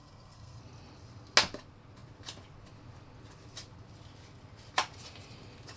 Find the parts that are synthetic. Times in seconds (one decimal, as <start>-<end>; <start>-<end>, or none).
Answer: 0.0-0.6